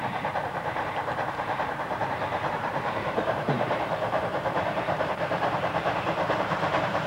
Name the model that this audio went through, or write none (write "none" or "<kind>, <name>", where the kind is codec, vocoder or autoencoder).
vocoder, BigVGAN v2